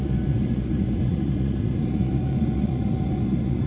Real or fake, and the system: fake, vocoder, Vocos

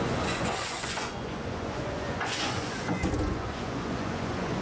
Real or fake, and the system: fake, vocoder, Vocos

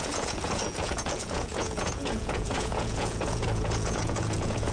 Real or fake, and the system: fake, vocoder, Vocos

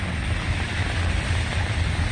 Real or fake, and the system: real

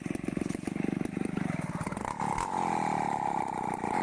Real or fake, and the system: real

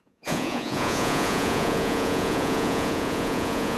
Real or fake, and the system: fake, vocoder, Vocos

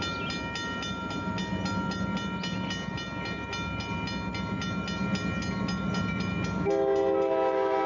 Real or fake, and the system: real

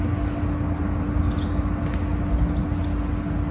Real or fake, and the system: real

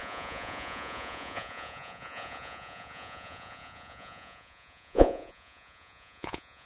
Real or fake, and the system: fake, vocoder, Vocos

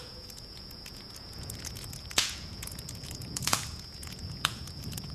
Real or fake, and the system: fake, vocoder, Vocos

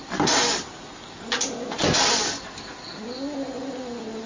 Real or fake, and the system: real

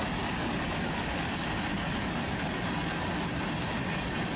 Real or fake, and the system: real